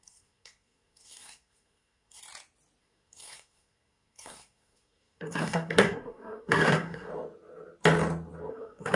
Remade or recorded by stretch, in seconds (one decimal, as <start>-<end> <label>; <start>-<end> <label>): 0.0-2.2 remade; 2.2-2.8 recorded; 2.8-7.1 remade; 7.1-8.5 recorded; 8.5-9.0 remade